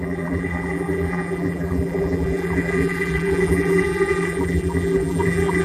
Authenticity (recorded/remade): remade